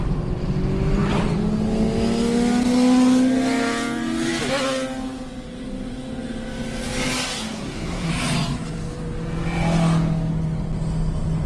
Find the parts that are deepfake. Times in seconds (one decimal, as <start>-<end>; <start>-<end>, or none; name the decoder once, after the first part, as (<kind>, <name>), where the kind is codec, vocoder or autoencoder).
7.4-8.1 (codec, SNAC)